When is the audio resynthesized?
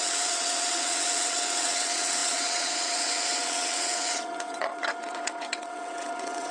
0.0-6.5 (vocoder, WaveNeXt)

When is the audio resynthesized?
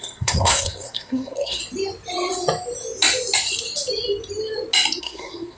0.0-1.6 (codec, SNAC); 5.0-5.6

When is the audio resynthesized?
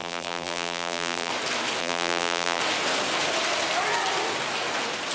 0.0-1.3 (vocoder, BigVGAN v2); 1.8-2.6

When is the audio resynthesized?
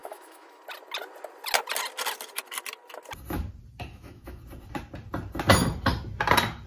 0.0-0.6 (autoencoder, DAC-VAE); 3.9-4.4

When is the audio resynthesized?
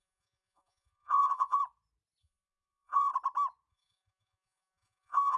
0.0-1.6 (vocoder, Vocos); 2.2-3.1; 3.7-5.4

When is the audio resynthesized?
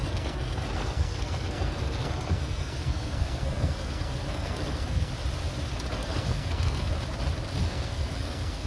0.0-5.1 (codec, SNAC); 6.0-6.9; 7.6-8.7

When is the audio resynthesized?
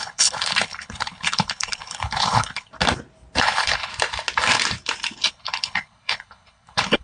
0.0-2.7 (codec, HILCodec); 3.4-3.9; 5.3-7.0